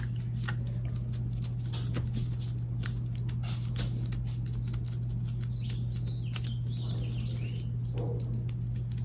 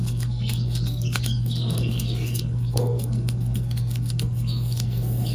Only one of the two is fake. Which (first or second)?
second